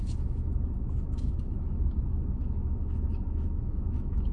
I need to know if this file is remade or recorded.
remade